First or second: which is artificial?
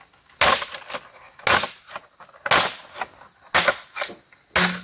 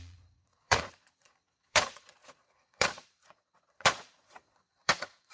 second